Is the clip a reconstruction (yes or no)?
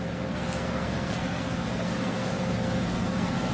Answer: yes